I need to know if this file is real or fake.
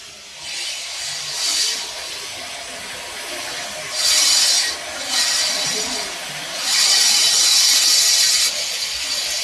real